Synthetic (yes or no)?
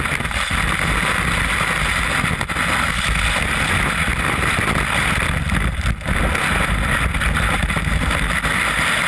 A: no